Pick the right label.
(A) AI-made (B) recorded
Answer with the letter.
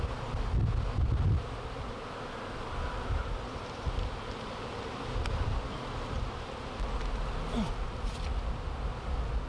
B